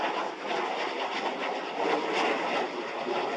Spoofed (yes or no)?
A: no